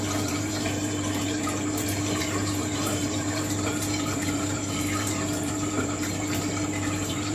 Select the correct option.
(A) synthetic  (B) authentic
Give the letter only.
A